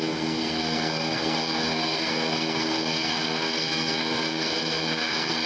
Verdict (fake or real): fake